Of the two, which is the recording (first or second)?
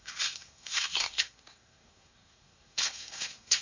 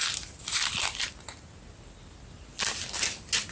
second